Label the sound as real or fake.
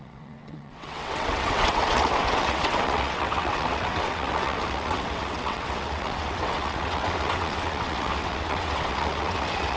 fake